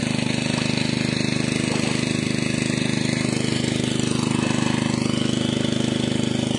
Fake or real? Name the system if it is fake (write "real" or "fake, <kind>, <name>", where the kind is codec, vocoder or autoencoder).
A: real